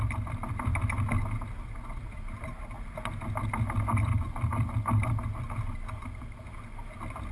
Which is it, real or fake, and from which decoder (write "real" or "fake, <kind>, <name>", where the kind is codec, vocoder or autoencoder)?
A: real